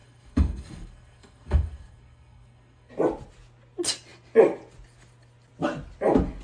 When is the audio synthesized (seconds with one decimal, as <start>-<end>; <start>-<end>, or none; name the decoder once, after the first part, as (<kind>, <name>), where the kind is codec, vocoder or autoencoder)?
0.0-2.9 (codec, SNAC)